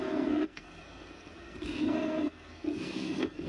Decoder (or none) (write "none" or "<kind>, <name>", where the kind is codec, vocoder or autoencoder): codec, SNAC